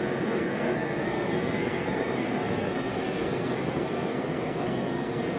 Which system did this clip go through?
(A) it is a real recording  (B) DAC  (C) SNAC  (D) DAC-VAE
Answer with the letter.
C